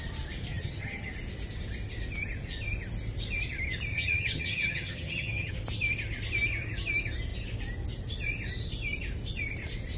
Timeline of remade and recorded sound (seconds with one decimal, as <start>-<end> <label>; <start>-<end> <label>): 0.0-0.5 recorded; 0.5-1.1 remade; 1.1-3.9 recorded; 3.9-5.5 remade; 5.5-10.0 recorded